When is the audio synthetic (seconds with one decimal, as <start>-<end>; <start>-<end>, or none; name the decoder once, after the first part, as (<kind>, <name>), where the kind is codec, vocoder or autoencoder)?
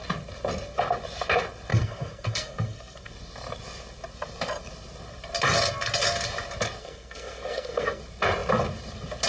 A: 1.7-3.1 (codec, SNAC); 6.8-8.0